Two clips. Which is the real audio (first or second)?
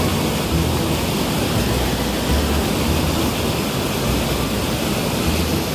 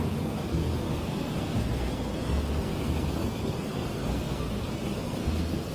first